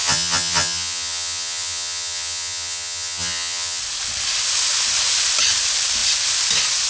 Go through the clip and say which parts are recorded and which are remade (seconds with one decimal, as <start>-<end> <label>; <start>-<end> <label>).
0.0-3.8 remade; 3.8-6.9 recorded